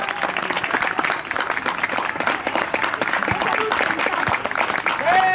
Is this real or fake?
real